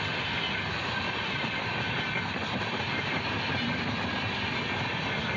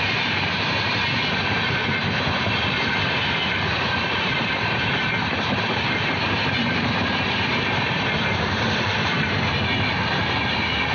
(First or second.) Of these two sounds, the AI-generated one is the second